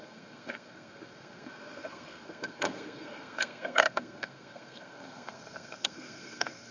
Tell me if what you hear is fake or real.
fake